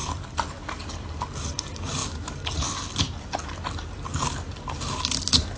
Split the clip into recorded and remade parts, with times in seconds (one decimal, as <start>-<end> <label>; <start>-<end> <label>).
0.0-5.6 recorded